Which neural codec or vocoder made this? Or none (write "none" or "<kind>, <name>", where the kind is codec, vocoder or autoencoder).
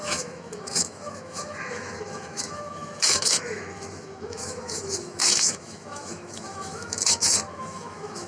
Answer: autoencoder, DAC-VAE